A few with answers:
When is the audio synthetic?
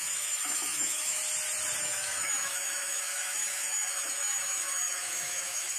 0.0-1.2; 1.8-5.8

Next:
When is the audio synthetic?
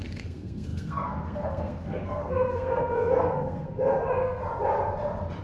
0.0-4.4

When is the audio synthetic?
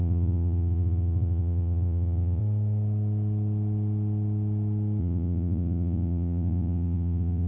0.0-2.4; 5.0-7.5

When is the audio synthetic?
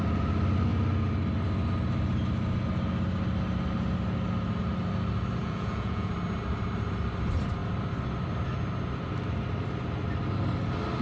5.4-6.1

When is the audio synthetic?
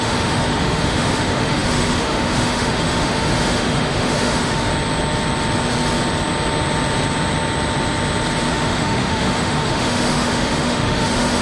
0.0-4.7; 8.5-11.4